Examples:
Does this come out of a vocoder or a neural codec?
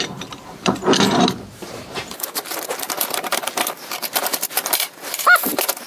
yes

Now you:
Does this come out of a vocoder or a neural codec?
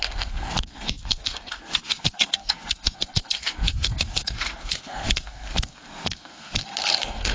yes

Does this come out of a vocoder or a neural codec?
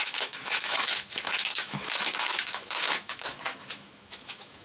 yes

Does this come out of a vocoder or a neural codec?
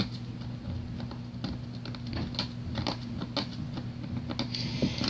no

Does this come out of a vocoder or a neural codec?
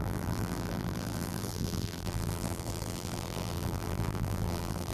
yes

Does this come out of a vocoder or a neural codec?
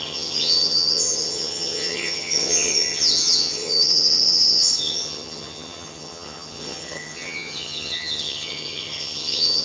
yes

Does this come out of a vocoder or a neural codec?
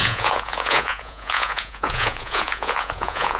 yes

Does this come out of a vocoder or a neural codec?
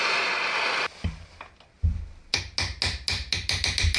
no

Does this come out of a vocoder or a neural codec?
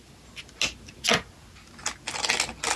no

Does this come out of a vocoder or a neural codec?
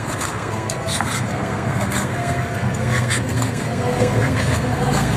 yes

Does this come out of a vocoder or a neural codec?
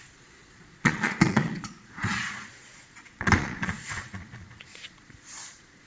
yes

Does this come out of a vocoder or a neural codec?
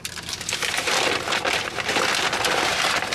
no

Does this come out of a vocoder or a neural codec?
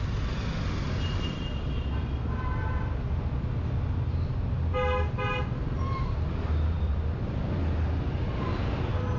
no